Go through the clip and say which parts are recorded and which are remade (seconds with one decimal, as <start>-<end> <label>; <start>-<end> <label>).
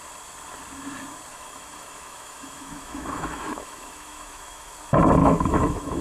0.0-1.3 recorded; 1.3-4.7 remade; 4.7-5.2 recorded; 5.2-6.0 remade